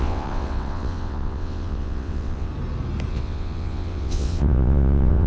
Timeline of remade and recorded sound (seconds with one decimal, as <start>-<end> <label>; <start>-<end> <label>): 0.0-2.5 remade; 2.5-3.1 recorded; 3.1-5.3 remade